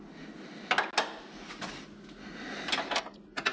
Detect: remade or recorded recorded